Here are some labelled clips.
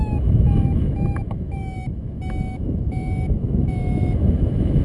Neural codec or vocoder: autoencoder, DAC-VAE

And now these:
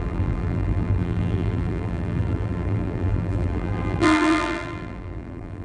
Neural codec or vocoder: vocoder, BigVGAN v2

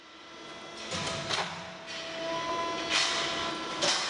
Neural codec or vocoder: none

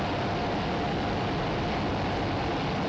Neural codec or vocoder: none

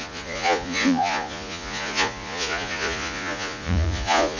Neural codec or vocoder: vocoder, Vocos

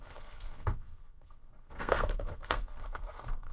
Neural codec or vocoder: codec, SNAC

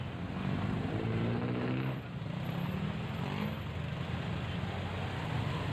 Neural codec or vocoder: none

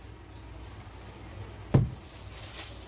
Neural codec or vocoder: none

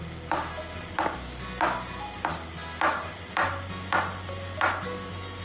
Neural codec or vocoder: none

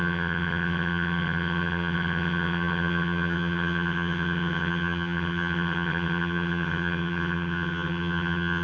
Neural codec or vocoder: vocoder, HiFi-GAN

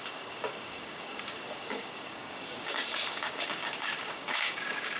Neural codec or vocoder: codec, DAC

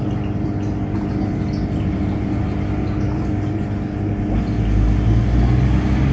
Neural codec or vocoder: none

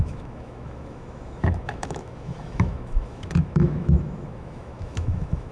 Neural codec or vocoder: autoencoder, DAC-VAE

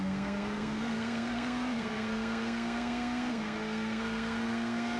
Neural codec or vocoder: codec, SNAC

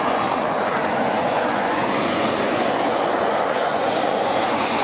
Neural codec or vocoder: vocoder, Vocos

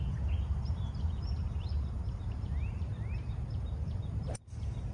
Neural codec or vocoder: vocoder, BigVGAN v2